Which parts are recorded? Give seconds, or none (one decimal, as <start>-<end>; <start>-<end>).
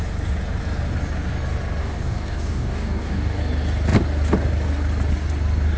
0.0-1.8; 3.4-5.8